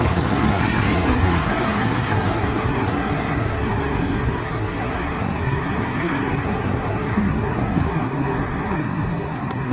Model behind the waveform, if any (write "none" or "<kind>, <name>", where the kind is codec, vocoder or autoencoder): codec, SNAC